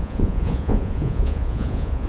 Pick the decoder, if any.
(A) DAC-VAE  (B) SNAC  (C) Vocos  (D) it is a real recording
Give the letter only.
C